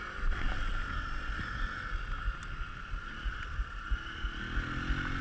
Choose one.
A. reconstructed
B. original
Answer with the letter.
B